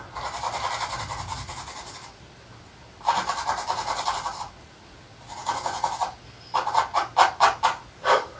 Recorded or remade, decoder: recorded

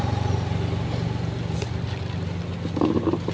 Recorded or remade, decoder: recorded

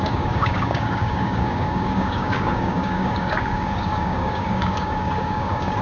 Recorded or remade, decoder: remade, codec, DAC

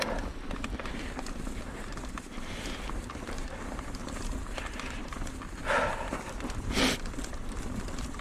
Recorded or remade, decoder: remade, vocoder, BigVGAN v2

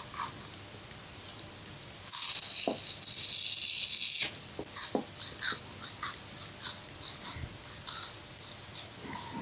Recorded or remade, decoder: recorded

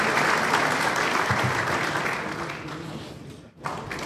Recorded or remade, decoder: recorded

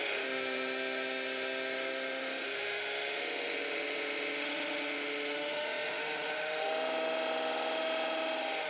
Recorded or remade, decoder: remade, autoencoder, DAC-VAE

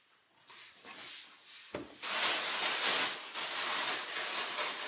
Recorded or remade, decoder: recorded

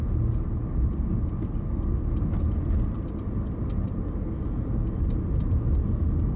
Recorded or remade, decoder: recorded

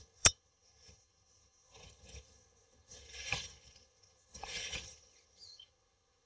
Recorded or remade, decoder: remade, vocoder, HiFi-GAN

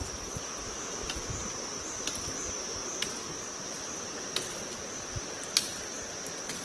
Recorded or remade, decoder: recorded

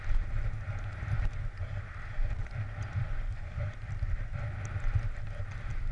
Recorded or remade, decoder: recorded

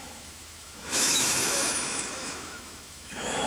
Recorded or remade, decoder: remade, autoencoder, DAC-VAE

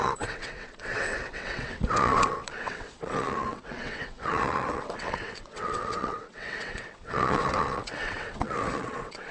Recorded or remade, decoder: remade, vocoder, WaveNeXt